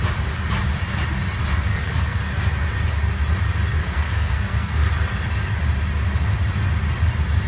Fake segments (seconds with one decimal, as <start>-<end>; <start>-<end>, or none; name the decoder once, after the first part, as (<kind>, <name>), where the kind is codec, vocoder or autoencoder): 1.7-2.2 (codec, SNAC); 3.8-4.9